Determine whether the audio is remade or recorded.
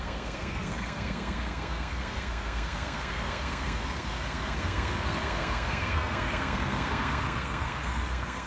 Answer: remade